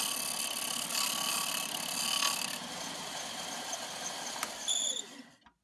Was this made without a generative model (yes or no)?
yes